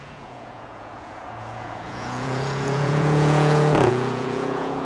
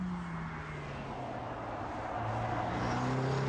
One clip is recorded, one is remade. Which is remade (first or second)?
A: first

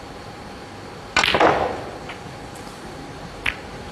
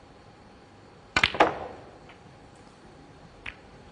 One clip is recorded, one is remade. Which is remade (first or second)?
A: second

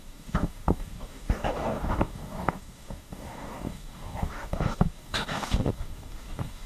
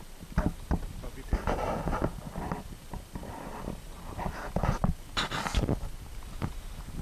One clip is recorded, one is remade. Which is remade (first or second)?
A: first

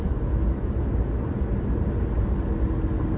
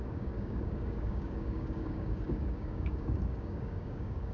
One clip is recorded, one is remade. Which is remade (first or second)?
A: second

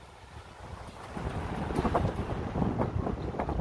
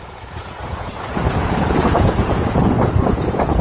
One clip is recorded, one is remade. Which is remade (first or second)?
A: second